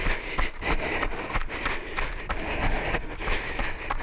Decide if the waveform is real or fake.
real